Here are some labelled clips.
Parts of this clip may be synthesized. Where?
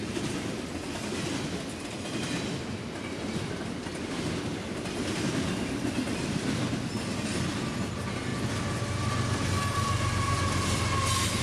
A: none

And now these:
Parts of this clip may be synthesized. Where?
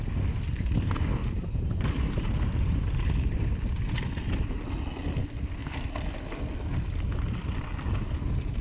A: 1.2-3.0 (vocoder, BigVGAN v2)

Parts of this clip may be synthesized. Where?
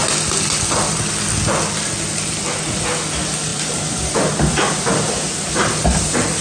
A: none